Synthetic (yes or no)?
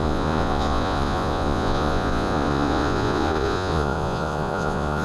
yes